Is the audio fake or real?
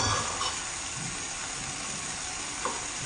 real